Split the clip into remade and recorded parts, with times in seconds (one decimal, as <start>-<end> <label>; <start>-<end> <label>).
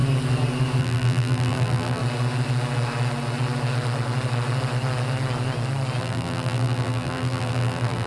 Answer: 0.0-0.8 recorded; 0.8-2.0 remade; 2.0-6.0 recorded; 6.0-8.1 remade